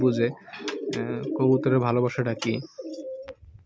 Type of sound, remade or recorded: recorded